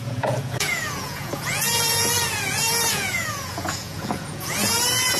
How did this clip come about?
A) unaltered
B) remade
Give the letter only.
B